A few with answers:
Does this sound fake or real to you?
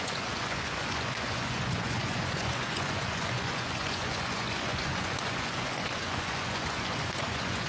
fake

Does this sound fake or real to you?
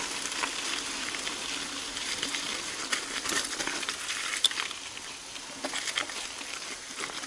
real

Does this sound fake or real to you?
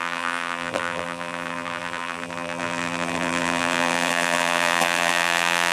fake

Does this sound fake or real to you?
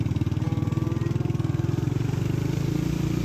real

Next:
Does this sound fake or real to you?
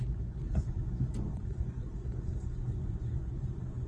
fake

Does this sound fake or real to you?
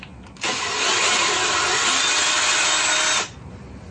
real